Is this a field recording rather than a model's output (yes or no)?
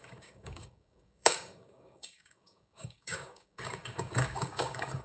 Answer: no